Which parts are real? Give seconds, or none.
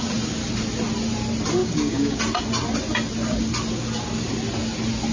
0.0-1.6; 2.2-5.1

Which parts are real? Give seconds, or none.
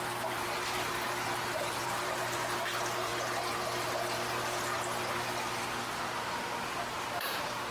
3.1-7.0